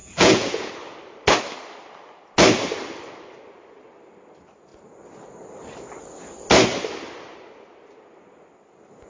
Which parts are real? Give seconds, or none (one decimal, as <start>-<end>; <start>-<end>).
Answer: 0.7-9.1